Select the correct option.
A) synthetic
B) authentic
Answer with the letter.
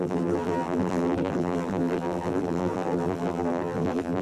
A